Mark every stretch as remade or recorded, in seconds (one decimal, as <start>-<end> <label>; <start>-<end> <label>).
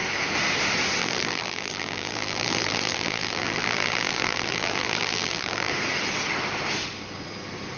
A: 0.0-1.0 recorded; 1.0-5.7 remade; 5.7-7.8 recorded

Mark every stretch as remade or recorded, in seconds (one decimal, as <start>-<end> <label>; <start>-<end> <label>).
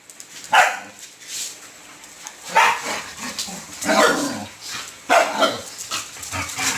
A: 0.0-6.8 recorded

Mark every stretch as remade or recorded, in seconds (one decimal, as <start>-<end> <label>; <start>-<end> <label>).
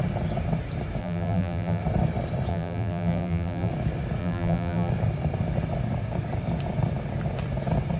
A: 0.0-1.0 recorded; 1.0-1.8 remade; 1.8-2.5 recorded; 2.5-3.7 remade; 3.7-4.2 recorded; 4.2-4.9 remade; 4.9-8.0 recorded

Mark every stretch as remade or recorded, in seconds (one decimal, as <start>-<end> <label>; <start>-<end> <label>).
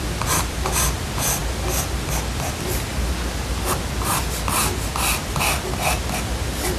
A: 0.0-6.8 recorded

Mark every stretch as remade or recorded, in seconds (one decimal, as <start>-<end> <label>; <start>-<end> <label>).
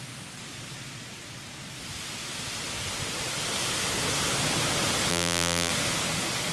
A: 0.0-5.1 recorded; 5.1-5.7 remade; 5.7-6.5 recorded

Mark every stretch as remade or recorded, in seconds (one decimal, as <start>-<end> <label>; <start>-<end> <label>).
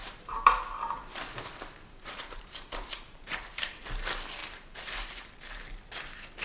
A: 0.0-3.8 remade; 3.8-4.4 recorded; 4.4-5.4 remade; 5.4-6.4 recorded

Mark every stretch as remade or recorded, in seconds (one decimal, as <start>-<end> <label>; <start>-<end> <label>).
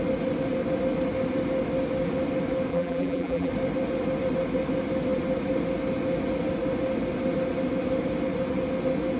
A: 0.0-2.7 recorded; 2.7-3.5 remade; 3.5-9.2 recorded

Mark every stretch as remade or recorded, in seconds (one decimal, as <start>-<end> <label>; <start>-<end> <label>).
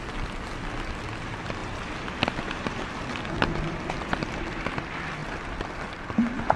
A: 0.0-1.6 remade; 1.6-3.7 recorded; 3.7-6.6 remade